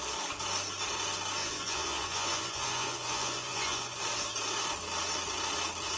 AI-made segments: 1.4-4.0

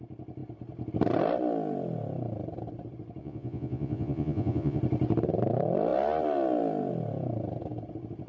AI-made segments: 3.2-4.8

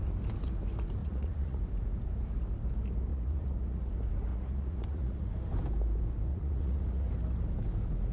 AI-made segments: 1.0-1.6; 3.1-3.9; 4.3-5.3; 6.3-7.1

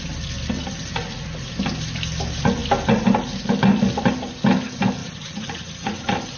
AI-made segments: 5.0-6.0

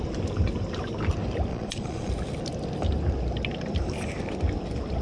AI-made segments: 1.5-2.1

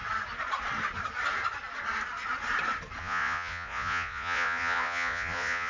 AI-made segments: 3.0-5.7

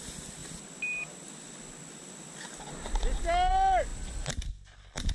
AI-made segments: none